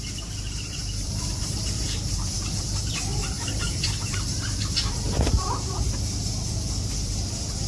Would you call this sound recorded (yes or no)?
no